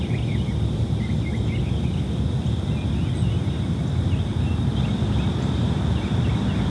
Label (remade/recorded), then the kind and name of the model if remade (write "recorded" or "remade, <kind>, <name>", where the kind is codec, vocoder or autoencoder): recorded